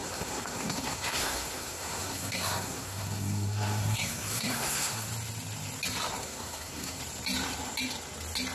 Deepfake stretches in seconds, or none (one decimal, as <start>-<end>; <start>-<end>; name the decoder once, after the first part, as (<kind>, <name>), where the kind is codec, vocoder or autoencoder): 0.0-5.1 (codec, SNAC); 6.2-7.0